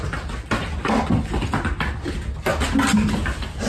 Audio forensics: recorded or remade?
recorded